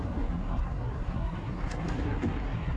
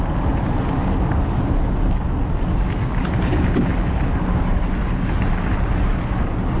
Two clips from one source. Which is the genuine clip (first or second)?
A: second